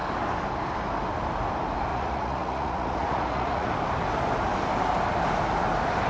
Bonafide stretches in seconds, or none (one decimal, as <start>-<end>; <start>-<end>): 0.0-1.9; 3.7-6.1